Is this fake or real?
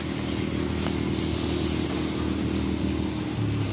real